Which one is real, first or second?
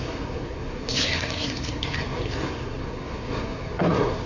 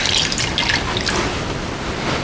second